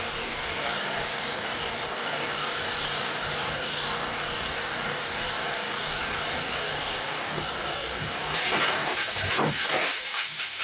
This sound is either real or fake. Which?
fake